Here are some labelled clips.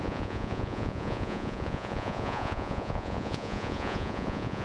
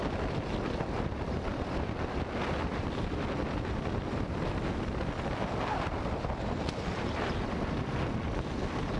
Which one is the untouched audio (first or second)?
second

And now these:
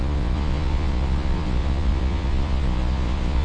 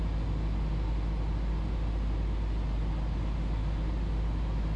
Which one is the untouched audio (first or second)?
second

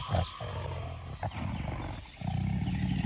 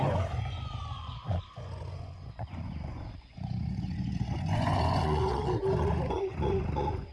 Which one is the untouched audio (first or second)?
first